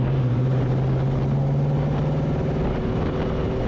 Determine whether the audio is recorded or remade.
recorded